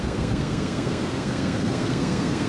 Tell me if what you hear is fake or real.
fake